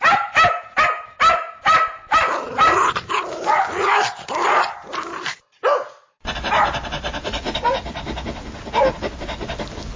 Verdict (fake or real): real